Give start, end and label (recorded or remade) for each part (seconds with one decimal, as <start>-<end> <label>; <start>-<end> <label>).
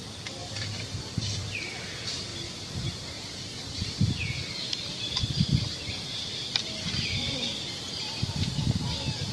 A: 0.0-2.3 remade; 2.3-3.1 recorded; 3.1-4.2 remade; 4.2-4.8 recorded; 4.8-9.3 remade